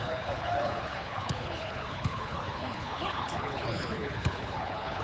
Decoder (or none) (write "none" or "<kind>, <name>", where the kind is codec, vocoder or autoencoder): codec, HILCodec